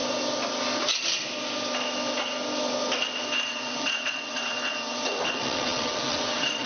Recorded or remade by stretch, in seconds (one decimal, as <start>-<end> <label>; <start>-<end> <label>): 0.0-3.4 recorded; 3.4-6.7 remade

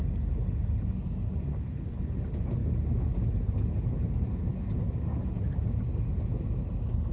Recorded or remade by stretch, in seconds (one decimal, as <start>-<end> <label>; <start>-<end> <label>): 0.0-7.1 recorded

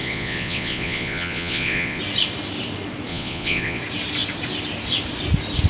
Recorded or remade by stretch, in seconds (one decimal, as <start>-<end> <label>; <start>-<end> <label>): 0.0-2.0 remade; 2.0-3.1 recorded; 3.1-3.8 remade; 3.8-5.7 recorded

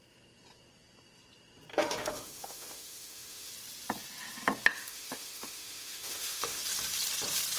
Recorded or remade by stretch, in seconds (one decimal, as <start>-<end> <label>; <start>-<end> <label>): 0.0-1.7 recorded; 1.7-3.5 remade; 3.5-4.7 recorded; 4.7-6.6 remade; 6.6-7.6 recorded

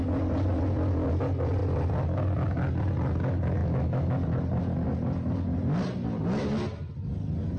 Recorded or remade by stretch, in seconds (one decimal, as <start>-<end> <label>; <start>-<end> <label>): 0.0-3.6 recorded; 3.6-4.1 remade; 4.1-7.6 recorded

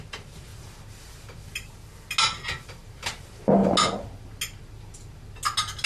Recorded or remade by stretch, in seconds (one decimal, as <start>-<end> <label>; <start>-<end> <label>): 0.0-0.5 remade; 0.5-3.0 recorded; 3.0-3.6 remade; 3.6-5.9 recorded

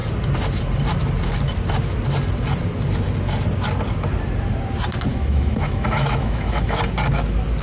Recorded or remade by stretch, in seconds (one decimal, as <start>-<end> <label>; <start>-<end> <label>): 0.0-5.1 recorded; 5.1-6.8 remade; 6.8-7.6 recorded